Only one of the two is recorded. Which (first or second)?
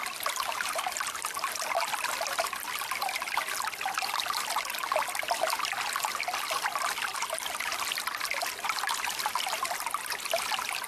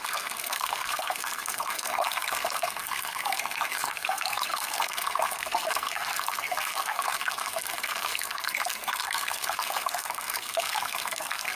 first